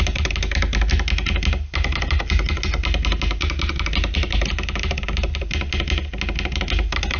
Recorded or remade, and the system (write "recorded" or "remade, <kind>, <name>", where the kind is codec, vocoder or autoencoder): recorded